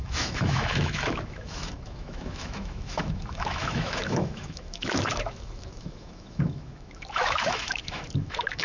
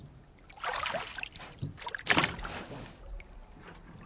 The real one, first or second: second